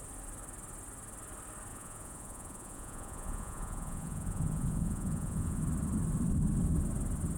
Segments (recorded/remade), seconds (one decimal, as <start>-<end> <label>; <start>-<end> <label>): 0.0-1.7 recorded; 1.7-5.6 remade; 5.6-7.4 recorded